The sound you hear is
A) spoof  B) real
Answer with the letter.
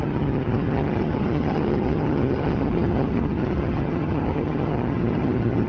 A